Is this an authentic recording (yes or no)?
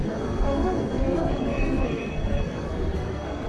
no